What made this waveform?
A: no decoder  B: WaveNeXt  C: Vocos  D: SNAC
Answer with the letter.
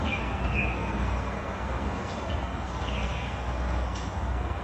D